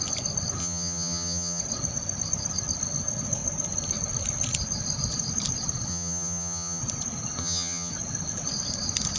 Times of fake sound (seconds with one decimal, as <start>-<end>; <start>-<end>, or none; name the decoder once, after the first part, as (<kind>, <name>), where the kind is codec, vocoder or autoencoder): 0.6-1.6 (vocoder, HiFi-GAN); 5.9-6.8; 7.4-7.9